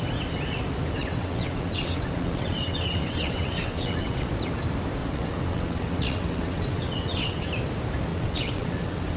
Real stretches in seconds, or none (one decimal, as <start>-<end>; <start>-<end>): 0.0-1.0; 4.3-5.0; 7.5-8.1